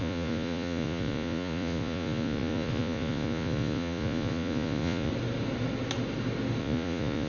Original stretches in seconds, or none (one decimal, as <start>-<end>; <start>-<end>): 5.1-6.6